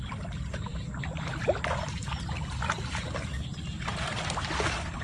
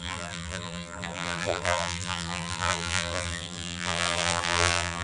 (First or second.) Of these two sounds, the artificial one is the second